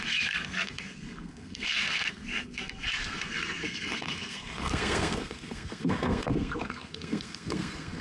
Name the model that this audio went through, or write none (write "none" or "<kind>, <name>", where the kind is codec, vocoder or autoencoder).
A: codec, SNAC